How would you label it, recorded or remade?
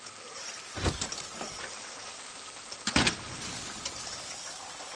recorded